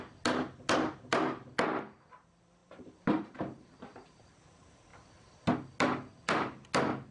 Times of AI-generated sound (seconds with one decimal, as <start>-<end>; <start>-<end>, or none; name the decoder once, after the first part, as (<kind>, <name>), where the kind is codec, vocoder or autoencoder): 2.6-4.5 (vocoder, BigVGAN v2)